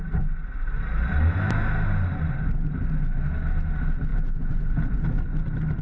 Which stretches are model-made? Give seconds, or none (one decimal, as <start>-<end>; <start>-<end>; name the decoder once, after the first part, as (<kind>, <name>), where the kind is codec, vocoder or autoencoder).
4.1-5.1 (vocoder, Vocos)